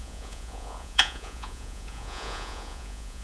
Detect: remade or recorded remade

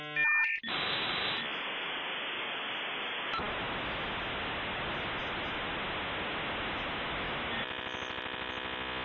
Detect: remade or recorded recorded